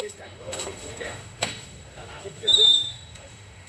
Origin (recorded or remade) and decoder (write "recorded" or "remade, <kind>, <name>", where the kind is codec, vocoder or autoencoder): remade, autoencoder, DAC-VAE